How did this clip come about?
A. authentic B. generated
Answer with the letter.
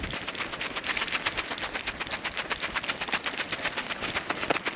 A